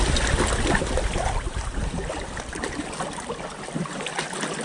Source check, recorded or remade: recorded